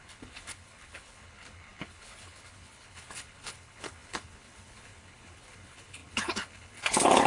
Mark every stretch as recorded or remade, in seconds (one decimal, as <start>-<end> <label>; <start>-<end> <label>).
0.0-7.3 remade